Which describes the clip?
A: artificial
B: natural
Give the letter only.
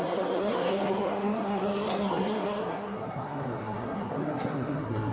A